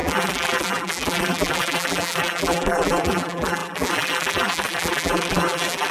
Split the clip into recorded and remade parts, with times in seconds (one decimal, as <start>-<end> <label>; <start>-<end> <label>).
0.0-5.9 remade